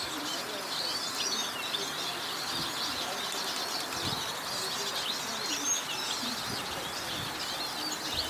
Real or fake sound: real